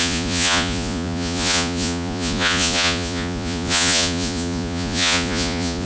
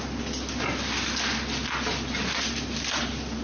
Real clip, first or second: second